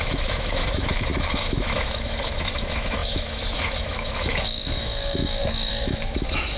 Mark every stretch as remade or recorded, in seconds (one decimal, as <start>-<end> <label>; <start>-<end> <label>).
0.0-6.6 remade